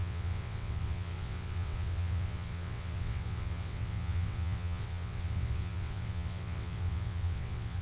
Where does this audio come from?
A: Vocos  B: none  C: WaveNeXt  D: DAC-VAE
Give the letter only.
C